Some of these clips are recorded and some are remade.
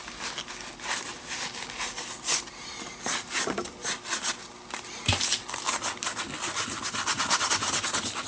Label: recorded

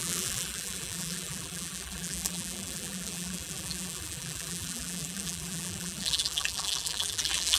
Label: remade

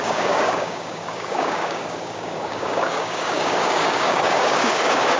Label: remade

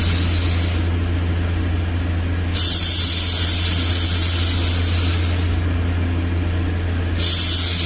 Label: recorded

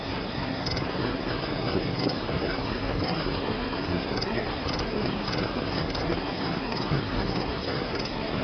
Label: remade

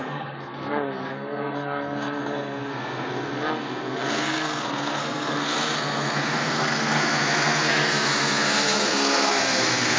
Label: remade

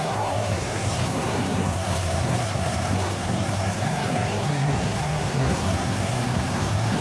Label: remade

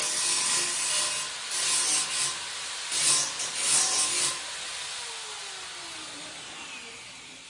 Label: recorded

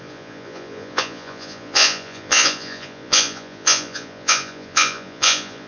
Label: remade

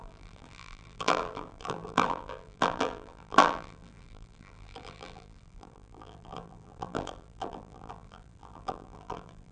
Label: remade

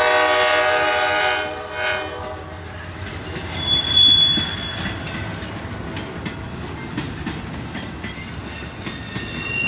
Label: recorded